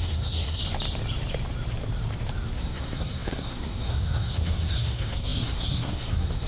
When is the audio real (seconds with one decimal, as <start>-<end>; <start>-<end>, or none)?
0.6-2.6